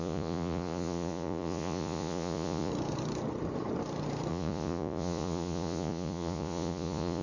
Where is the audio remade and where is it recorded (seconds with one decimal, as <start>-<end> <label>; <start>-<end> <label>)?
0.0-2.7 remade; 2.7-4.3 recorded; 4.3-7.2 remade